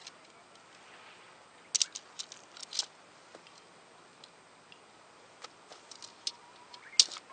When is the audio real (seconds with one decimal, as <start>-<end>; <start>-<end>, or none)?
0.0-7.3

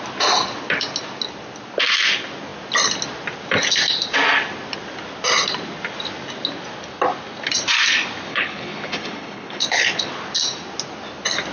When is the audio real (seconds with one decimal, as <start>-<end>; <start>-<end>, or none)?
0.0-8.3; 10.1-11.5

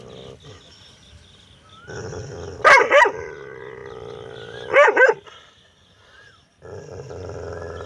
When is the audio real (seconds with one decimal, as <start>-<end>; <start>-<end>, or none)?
0.0-7.9

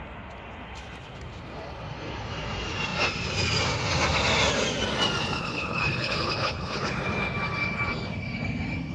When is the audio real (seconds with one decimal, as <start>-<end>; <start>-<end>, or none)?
0.0-5.2; 7.0-8.9

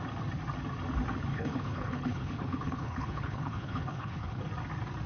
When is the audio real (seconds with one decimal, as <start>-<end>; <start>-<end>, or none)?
0.0-1.3; 4.4-5.1

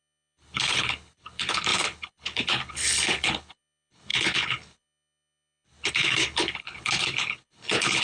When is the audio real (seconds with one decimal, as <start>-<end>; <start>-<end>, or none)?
none